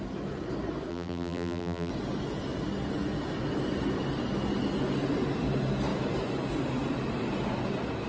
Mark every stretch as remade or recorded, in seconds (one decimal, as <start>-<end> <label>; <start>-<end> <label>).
0.0-0.9 recorded; 0.9-1.9 remade; 1.9-8.1 recorded